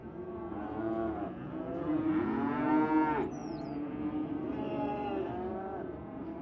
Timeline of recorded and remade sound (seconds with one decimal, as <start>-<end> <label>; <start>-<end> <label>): 0.0-2.7 remade; 2.7-3.4 recorded; 3.4-4.0 remade; 4.0-5.5 recorded; 5.5-6.4 remade